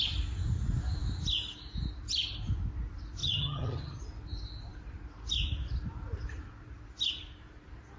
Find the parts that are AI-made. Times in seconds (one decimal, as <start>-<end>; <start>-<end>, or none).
3.2-4.0